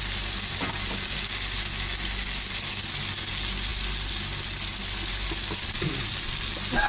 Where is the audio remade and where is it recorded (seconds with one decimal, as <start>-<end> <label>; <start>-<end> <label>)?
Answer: 0.0-6.9 recorded